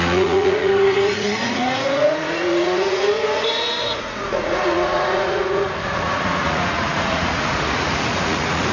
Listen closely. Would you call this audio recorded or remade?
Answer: remade